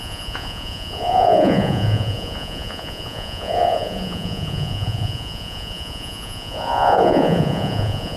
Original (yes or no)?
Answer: no